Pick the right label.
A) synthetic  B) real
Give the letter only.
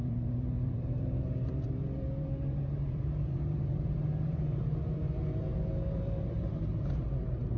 A